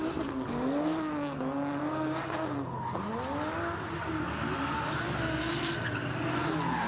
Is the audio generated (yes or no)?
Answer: no